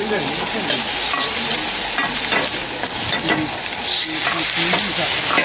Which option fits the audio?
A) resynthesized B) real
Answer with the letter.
B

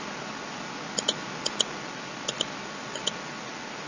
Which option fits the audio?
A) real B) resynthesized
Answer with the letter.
A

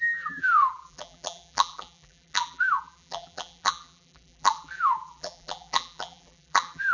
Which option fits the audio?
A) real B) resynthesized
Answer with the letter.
B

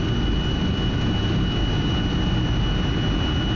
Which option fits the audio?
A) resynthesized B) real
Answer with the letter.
B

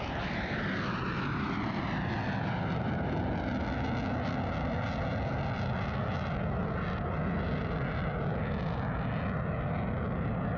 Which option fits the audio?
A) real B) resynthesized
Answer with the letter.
A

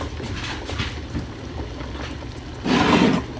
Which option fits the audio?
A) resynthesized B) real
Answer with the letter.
B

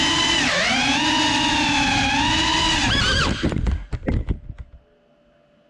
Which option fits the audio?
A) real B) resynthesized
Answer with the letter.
A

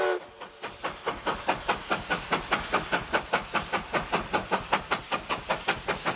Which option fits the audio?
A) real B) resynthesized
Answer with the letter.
A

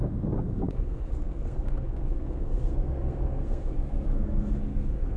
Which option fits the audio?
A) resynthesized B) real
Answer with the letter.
A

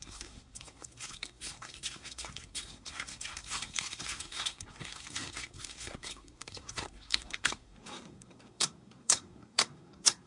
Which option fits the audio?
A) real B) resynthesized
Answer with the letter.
B